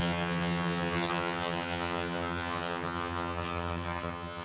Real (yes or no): no